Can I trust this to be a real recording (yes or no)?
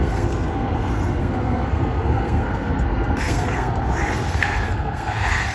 no